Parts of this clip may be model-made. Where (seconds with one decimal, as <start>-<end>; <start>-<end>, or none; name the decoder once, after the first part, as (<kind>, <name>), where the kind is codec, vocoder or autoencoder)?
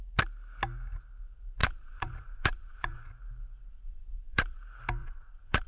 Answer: 1.6-3.1 (vocoder, Vocos); 3.7-4.6; 5.0-5.7